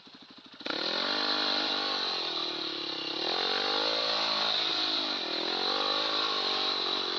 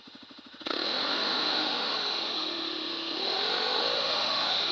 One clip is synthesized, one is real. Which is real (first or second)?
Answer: first